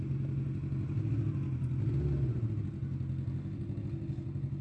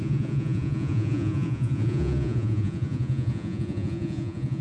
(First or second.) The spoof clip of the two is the second